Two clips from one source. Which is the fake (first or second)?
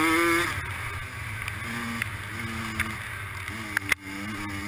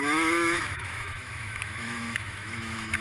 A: second